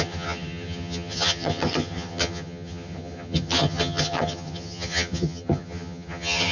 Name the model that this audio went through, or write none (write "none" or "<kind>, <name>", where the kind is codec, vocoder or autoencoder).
vocoder, HiFi-GAN